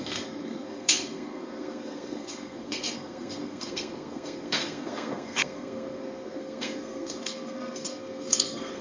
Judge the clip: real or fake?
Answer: fake